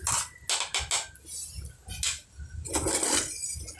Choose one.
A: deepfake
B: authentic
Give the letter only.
B